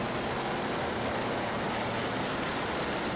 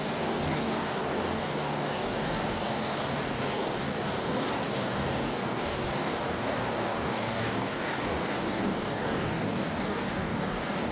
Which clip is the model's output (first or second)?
second